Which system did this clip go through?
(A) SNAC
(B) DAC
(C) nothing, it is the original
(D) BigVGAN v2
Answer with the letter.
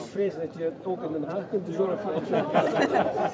D